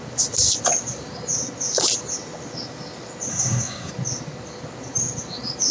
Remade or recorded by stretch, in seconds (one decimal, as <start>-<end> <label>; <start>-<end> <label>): 0.0-3.3 recorded; 3.3-3.9 remade; 3.9-5.7 recorded